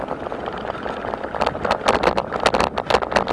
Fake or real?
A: real